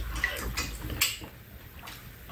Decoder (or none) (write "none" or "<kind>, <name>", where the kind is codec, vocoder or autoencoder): none